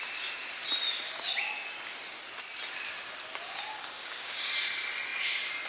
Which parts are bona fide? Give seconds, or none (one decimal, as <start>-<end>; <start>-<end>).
0.0-3.7; 4.5-5.7